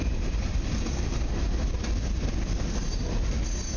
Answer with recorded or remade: recorded